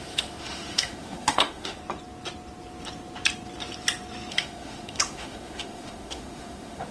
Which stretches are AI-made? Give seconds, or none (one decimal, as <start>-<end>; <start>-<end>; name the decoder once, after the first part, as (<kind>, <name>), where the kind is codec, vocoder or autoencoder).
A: 0.0-1.8 (autoencoder, DAC-VAE); 4.3-6.9

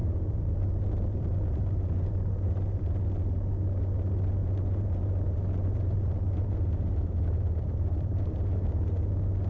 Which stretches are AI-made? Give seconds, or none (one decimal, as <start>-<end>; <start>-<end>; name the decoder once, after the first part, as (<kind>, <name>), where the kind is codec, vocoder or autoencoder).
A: 0.0-2.8 (vocoder, BigVGAN v2); 4.4-9.1

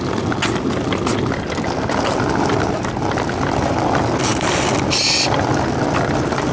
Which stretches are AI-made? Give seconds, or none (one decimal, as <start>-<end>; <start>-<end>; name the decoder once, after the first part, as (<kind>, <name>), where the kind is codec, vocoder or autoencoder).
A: none

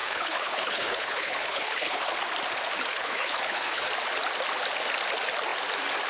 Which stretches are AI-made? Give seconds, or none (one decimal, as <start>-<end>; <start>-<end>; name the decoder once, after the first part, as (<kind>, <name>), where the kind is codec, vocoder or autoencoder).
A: 0.0-2.1 (codec, HILCodec); 2.9-3.9

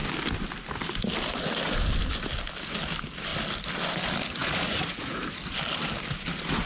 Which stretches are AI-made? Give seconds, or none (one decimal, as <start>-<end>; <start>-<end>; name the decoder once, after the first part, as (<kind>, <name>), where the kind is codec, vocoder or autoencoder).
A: 4.4-5.2 (vocoder, Vocos)

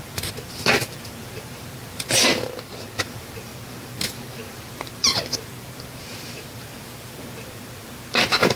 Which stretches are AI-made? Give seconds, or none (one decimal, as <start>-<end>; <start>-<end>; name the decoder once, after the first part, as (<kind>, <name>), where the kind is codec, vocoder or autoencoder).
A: 0.0-2.3 (vocoder, BigVGAN v2); 3.0-3.5; 4.5-8.6

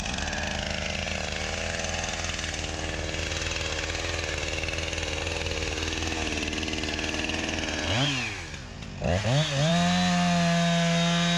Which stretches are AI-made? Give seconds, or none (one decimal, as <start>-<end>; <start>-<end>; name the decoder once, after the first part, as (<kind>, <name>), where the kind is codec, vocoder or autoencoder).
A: none